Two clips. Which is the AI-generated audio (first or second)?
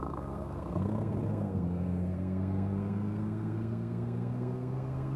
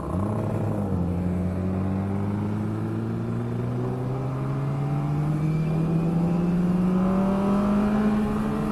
first